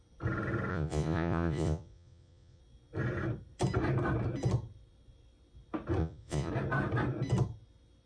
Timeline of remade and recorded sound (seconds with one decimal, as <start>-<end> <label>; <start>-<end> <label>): 0.0-0.7 recorded; 0.7-2.6 remade; 2.6-6.0 recorded; 6.0-6.5 remade; 6.5-8.1 recorded

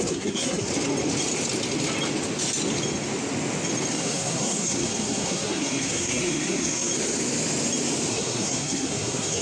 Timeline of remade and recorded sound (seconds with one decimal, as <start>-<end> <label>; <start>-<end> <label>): 0.0-0.7 remade; 0.7-3.9 recorded; 3.9-6.9 remade; 6.9-8.1 recorded; 8.1-9.4 remade

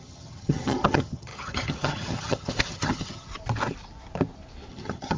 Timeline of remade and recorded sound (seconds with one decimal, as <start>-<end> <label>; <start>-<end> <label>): 0.0-3.3 remade; 3.3-4.7 recorded; 4.7-5.2 remade

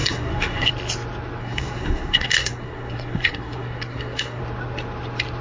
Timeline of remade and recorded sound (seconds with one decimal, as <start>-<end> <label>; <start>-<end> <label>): 0.0-0.7 remade; 0.7-1.4 recorded; 1.4-4.4 remade; 4.4-5.4 recorded

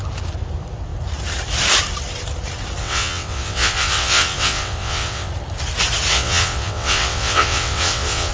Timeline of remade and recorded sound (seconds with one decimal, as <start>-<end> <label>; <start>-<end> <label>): 0.0-2.8 recorded; 2.8-5.3 remade; 5.3-6.1 recorded; 6.1-8.3 remade

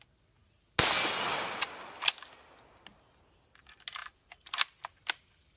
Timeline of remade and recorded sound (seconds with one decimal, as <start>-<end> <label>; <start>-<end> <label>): 0.0-4.0 recorded; 4.0-5.6 remade

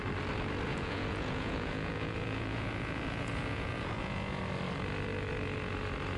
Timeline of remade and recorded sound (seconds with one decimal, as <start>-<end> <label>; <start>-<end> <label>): 0.0-0.7 recorded; 0.7-4.4 remade; 4.4-6.2 recorded

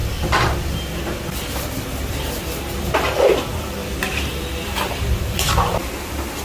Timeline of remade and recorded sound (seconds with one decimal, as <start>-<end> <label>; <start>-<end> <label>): 0.0-2.9 recorded; 2.9-3.8 remade; 3.8-4.5 recorded; 4.5-6.4 remade